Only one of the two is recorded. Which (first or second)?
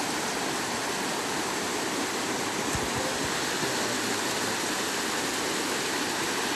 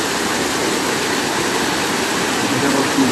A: first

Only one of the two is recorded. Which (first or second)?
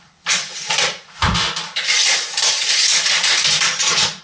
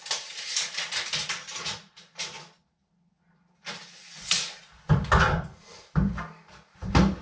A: second